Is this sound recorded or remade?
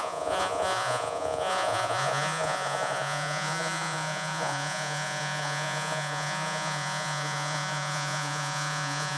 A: remade